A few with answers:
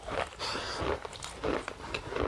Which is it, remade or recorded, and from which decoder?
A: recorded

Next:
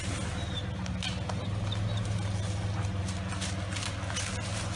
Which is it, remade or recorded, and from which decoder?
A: recorded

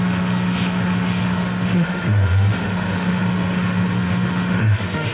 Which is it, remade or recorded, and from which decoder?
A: remade, autoencoder, DAC-VAE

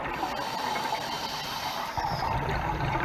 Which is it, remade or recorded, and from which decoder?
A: recorded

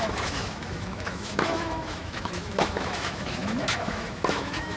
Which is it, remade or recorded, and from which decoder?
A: remade, autoencoder, DAC-VAE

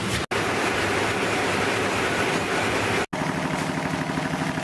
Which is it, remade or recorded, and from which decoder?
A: recorded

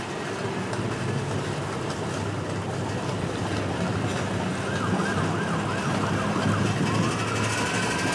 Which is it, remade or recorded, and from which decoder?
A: recorded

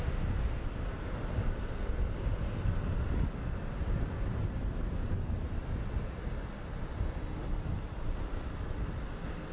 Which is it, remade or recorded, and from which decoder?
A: recorded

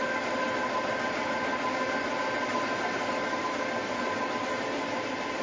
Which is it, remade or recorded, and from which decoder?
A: recorded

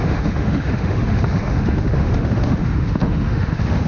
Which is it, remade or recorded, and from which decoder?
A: remade, autoencoder, DAC-VAE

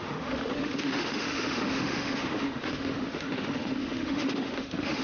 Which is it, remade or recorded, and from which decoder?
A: remade, autoencoder, DAC-VAE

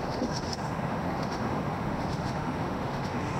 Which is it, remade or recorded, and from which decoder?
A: remade, autoencoder, DAC-VAE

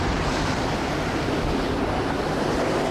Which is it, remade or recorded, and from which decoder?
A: recorded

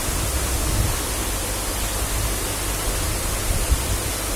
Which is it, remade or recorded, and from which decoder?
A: recorded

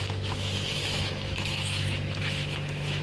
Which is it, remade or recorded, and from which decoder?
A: remade, autoencoder, DAC-VAE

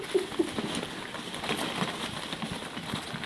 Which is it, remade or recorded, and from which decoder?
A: recorded